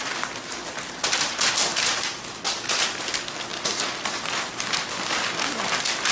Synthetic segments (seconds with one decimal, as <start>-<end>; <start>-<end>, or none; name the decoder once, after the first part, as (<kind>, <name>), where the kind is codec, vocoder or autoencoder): 1.0-1.5 (vocoder, BigVGAN v2)